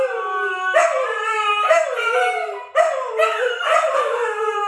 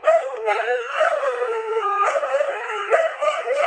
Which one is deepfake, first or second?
second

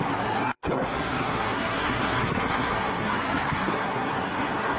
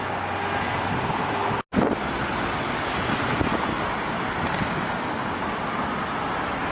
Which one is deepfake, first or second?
first